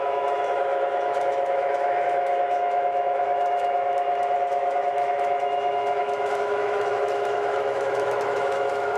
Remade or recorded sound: remade